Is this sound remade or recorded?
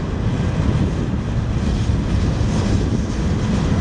recorded